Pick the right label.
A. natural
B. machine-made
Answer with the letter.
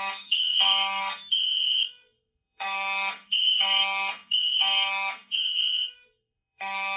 B